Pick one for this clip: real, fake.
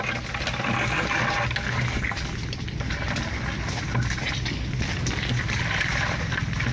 real